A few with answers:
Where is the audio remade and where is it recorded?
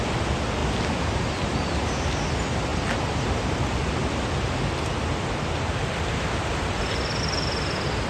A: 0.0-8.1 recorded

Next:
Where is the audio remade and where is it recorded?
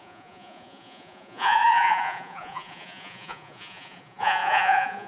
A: 0.0-5.1 remade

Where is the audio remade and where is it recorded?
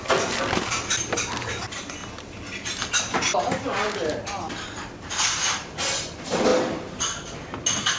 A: 0.0-8.0 recorded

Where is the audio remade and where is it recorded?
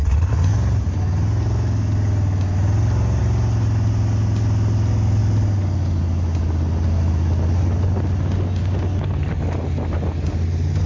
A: 0.0-10.9 recorded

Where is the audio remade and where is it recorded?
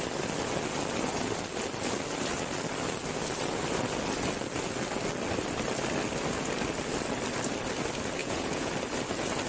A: 0.0-8.2 recorded; 8.2-8.7 remade; 8.7-9.5 recorded